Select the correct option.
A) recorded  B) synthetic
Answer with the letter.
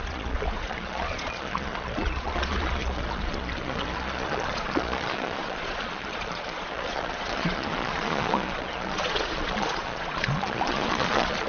B